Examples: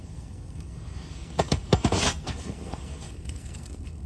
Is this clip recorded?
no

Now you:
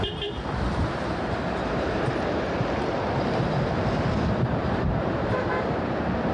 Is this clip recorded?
no